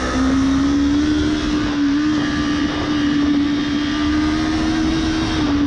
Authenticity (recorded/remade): recorded